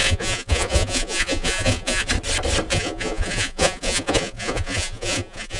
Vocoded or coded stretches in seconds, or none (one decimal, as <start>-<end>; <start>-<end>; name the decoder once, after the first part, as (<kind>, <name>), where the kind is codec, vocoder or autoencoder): 0.0-2.1 (vocoder, Vocos); 2.7-5.6